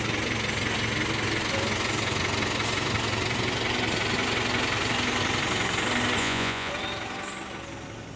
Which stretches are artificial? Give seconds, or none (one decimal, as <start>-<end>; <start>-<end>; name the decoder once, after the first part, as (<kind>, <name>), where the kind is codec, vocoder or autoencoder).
6.2-6.7 (vocoder, Vocos)